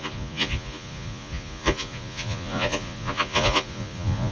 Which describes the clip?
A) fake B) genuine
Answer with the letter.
A